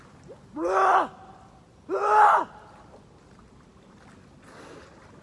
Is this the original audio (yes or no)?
yes